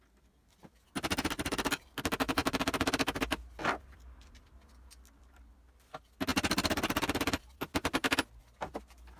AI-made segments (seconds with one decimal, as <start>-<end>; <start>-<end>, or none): none